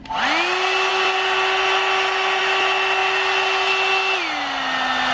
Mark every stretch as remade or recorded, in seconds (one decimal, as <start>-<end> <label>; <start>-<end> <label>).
0.0-5.1 recorded

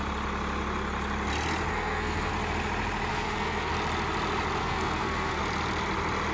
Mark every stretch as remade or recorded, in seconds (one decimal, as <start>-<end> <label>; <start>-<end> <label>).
0.0-1.7 recorded; 1.7-2.3 remade; 2.3-3.1 recorded; 3.1-3.7 remade; 3.7-4.6 recorded; 4.6-5.4 remade; 5.4-6.3 recorded

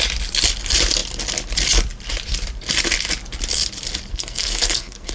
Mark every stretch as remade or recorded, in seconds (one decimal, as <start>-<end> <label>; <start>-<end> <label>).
0.0-4.1 recorded; 4.1-5.1 remade

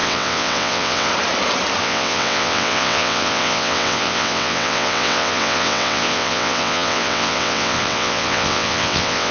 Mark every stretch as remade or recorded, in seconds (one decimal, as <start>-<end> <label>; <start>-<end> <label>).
0.0-1.1 remade; 1.1-1.8 recorded; 1.8-9.3 remade

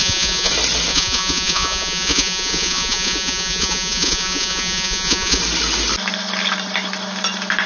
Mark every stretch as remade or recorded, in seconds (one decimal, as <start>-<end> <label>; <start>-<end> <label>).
0.0-0.5 remade; 0.5-0.9 recorded; 0.9-5.4 remade; 5.4-7.7 recorded

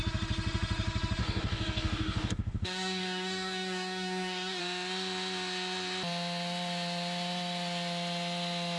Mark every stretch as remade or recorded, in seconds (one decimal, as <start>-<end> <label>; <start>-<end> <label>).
0.0-1.2 recorded; 1.2-4.6 remade; 4.6-8.8 recorded